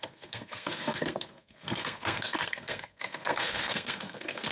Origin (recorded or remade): remade